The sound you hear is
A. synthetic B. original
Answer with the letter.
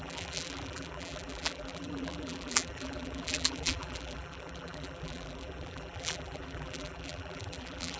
A